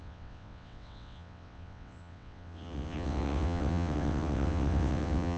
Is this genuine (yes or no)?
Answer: no